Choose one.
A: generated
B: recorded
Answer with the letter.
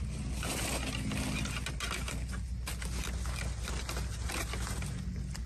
B